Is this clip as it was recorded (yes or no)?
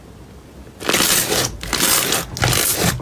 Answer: yes